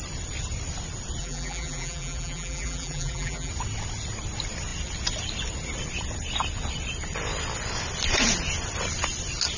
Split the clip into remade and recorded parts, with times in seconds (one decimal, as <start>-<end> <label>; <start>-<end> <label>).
0.0-1.2 recorded; 1.2-3.5 remade; 3.5-9.6 recorded

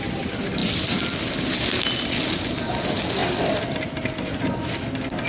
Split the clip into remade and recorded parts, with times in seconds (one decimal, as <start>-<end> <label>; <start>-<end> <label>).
0.0-0.6 remade; 0.6-2.8 recorded; 2.8-5.3 remade

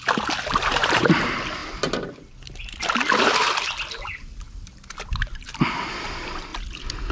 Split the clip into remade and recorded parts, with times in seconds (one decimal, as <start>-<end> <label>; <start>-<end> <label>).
0.0-0.5 recorded; 0.5-1.6 remade; 1.6-5.9 recorded; 5.9-6.5 remade; 6.5-7.1 recorded

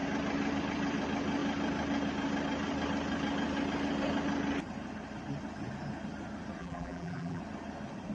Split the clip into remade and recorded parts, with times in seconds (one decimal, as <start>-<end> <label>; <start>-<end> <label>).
0.0-6.6 recorded; 6.6-7.4 remade; 7.4-8.1 recorded

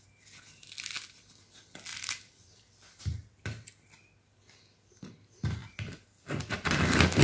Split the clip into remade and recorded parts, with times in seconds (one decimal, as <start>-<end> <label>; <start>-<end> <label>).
0.0-7.2 recorded

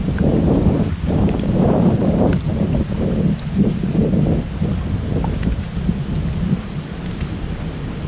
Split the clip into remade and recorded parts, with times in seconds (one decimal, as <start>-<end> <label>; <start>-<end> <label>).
0.0-2.5 remade; 2.5-8.1 recorded